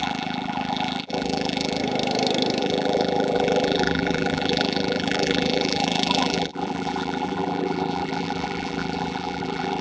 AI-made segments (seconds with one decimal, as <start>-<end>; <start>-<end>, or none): 0.0-1.8; 2.6-9.8

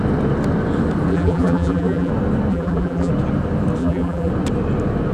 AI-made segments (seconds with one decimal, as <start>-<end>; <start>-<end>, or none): 1.1-2.1; 2.5-3.1; 3.8-4.3